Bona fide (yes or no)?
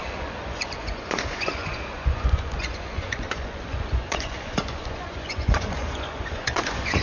no